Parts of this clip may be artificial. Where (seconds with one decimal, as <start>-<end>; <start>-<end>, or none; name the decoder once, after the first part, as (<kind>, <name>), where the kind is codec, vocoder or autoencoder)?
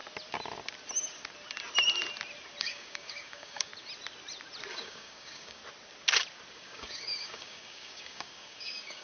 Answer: 2.6-3.7 (codec, DAC); 4.7-5.6; 6.5-9.0